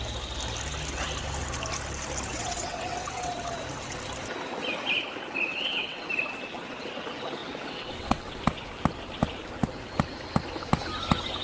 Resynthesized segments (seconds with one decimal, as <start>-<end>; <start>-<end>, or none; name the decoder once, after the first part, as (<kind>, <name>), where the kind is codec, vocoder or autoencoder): 2.3-3.3 (vocoder, WaveNeXt); 5.5-6.0; 7.4-8.4